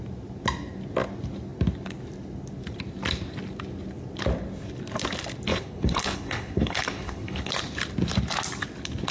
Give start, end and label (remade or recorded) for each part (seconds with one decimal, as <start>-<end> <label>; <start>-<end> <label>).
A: 0.0-5.5 recorded; 5.5-7.5 remade; 7.5-9.1 recorded